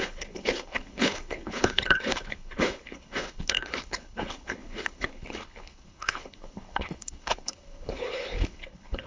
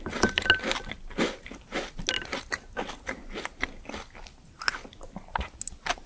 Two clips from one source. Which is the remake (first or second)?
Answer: first